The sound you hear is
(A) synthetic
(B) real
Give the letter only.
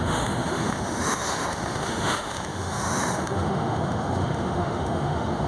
A